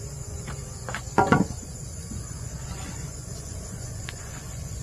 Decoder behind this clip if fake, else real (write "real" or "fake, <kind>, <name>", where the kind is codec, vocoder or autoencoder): fake, vocoder, Vocos